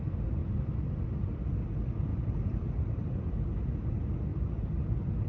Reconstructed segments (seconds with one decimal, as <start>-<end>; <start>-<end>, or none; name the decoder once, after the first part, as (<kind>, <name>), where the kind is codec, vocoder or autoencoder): none